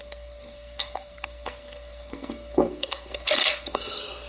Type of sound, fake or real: fake